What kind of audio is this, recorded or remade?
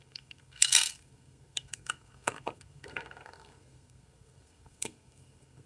remade